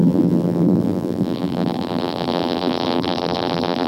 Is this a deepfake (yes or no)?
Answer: yes